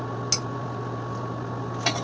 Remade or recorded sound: recorded